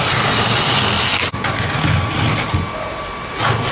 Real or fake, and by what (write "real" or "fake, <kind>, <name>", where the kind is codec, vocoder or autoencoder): real